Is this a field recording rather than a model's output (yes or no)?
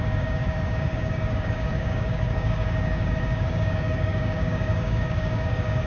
no